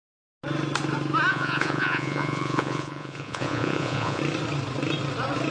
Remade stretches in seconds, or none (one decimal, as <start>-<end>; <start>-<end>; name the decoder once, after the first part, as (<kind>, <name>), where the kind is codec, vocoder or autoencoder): 1.3-4.2 (vocoder, Vocos)